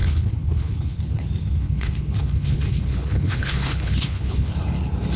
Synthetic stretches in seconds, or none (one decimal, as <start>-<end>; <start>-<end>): 0.0-1.0; 1.4-4.5